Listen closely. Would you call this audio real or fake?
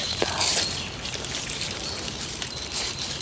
fake